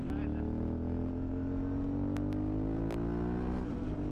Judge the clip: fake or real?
real